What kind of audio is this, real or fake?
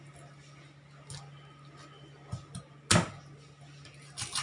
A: real